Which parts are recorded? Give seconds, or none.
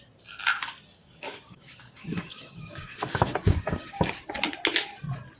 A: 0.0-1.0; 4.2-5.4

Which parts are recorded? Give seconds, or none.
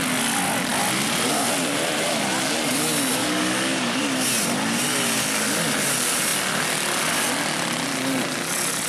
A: 0.0-3.2; 4.0-8.9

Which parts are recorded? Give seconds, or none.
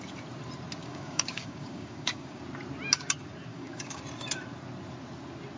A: 0.0-0.8; 2.4-3.5; 4.0-5.6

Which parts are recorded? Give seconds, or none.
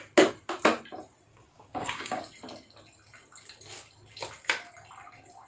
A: 0.0-1.3; 2.2-5.5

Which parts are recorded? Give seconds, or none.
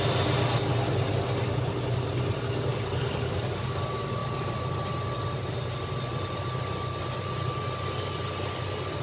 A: 0.0-2.7; 3.8-9.0